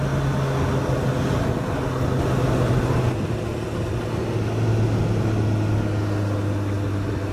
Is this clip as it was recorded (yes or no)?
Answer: yes